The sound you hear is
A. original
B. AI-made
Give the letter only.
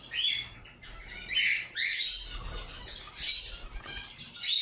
A